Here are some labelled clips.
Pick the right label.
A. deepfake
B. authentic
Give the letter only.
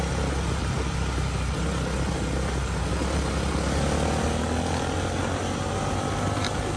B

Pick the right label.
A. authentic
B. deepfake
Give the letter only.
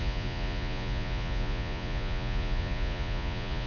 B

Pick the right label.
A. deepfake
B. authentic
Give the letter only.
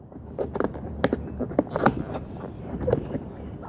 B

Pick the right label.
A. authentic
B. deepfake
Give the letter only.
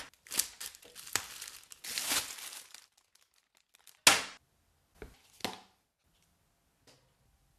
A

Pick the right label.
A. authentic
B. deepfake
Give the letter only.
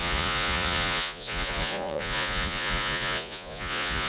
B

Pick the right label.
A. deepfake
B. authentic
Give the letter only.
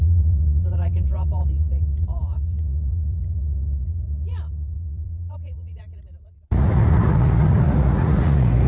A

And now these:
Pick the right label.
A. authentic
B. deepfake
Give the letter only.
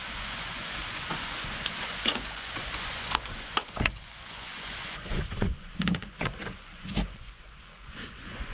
B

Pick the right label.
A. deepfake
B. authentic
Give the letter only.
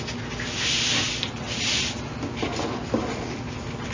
B